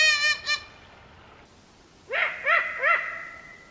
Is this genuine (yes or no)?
yes